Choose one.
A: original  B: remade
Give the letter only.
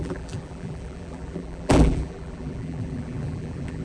B